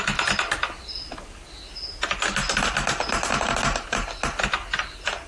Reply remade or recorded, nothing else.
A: recorded